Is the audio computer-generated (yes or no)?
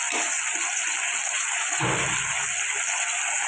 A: no